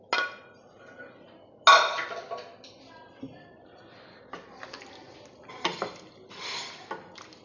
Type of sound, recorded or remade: recorded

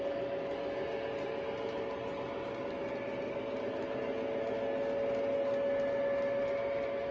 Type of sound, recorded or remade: recorded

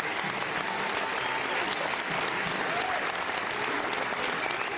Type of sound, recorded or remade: recorded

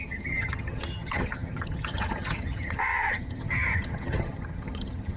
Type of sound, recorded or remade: remade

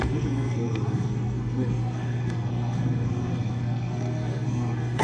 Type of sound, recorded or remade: remade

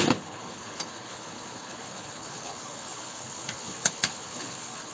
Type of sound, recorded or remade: remade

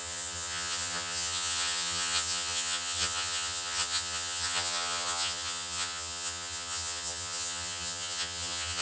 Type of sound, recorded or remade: remade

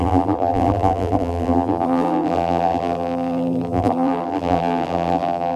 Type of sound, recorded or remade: remade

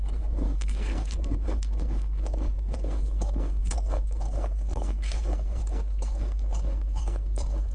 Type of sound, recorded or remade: remade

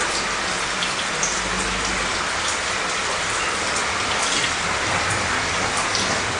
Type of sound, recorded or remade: recorded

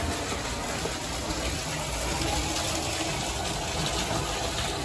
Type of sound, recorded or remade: recorded